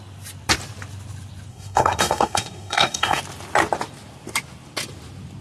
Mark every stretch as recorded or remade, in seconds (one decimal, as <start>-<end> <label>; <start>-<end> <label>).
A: 0.0-1.5 recorded; 1.5-3.2 remade; 3.2-5.4 recorded